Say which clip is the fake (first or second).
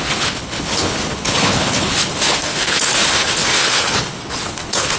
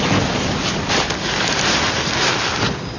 first